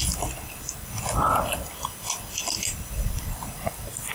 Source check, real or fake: real